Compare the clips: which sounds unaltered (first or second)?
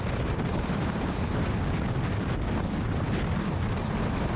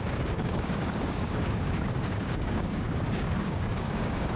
first